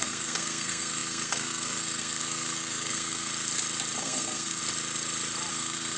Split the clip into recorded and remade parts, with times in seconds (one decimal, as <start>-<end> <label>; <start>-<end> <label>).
0.0-3.3 remade; 3.3-4.0 recorded; 4.0-4.6 remade; 4.6-5.5 recorded; 5.5-6.0 remade